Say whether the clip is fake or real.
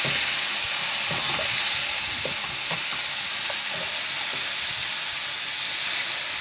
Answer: real